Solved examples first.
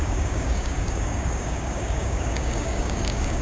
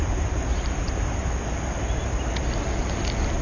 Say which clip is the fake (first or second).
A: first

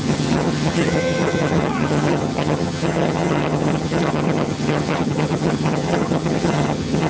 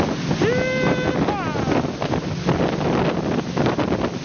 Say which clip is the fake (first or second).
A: first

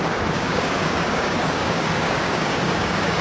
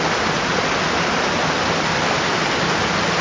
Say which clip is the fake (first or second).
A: first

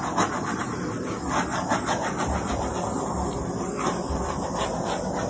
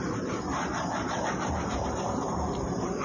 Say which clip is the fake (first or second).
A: second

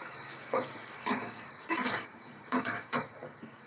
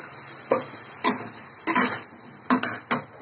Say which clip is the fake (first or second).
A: first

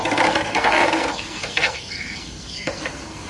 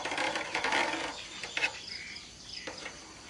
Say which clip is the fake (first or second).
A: first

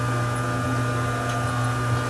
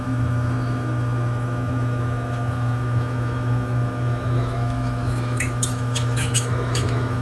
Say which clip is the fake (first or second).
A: second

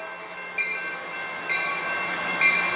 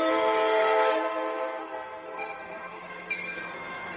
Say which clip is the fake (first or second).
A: second